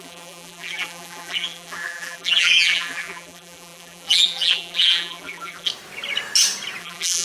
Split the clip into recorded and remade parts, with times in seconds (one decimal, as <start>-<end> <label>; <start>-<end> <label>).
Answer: 0.0-5.7 remade; 5.7-6.8 recorded; 6.8-7.2 remade